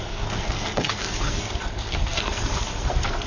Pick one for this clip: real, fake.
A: fake